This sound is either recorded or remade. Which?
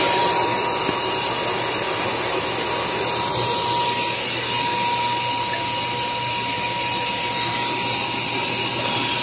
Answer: recorded